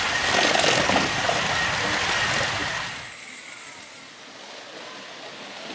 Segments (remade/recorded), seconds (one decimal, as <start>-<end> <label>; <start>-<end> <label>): 0.0-5.7 recorded